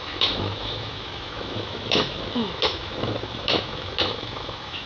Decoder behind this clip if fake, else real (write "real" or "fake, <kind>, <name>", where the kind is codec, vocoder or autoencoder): fake, autoencoder, DAC-VAE